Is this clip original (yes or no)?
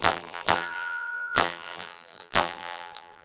no